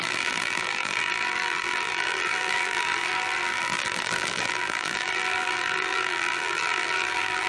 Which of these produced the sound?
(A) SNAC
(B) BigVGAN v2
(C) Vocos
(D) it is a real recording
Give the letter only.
B